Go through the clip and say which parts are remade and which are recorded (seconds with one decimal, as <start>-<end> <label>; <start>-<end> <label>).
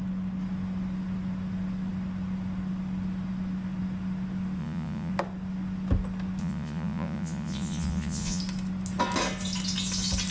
0.0-4.6 recorded; 4.6-5.1 remade; 5.1-6.4 recorded; 6.4-8.4 remade; 8.4-10.3 recorded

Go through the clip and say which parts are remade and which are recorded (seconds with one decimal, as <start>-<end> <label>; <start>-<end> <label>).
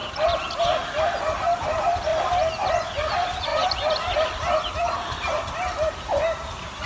0.0-6.9 recorded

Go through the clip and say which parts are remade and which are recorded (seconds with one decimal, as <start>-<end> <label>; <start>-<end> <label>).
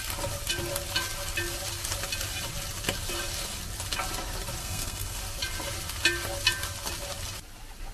0.0-4.6 recorded; 4.6-5.2 remade; 5.2-7.9 recorded